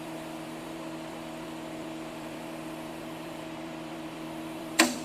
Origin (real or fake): fake